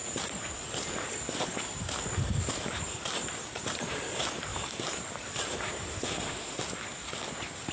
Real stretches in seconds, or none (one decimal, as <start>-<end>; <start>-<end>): 0.0-5.9; 6.6-7.7